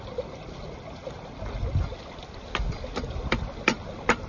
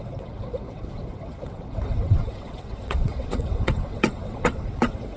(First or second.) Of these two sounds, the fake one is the second